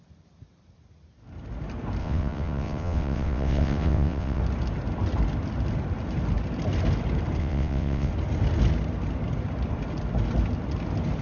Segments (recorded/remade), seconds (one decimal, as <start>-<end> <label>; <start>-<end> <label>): 0.0-2.0 recorded; 2.0-4.4 remade; 4.4-7.4 recorded; 7.4-8.1 remade; 8.1-11.2 recorded